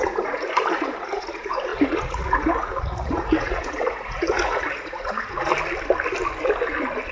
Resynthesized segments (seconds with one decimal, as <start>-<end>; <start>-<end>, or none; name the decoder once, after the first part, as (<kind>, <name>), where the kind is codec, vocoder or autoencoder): 0.0-5.5 (vocoder, Vocos)